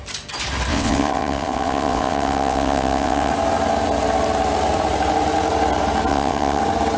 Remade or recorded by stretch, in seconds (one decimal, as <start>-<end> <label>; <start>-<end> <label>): 0.0-0.7 recorded; 0.7-3.3 remade; 3.3-6.1 recorded; 6.1-6.6 remade; 6.6-7.0 recorded